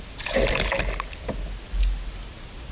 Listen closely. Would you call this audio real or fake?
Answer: real